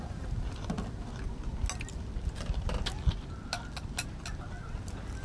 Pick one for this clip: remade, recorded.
recorded